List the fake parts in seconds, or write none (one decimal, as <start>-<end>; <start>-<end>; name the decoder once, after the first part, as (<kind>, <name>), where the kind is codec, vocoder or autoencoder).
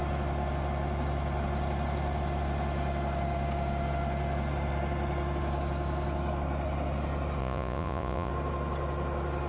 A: 7.4-8.3 (vocoder, Vocos)